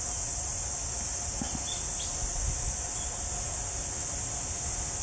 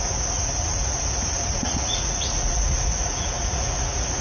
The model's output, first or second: second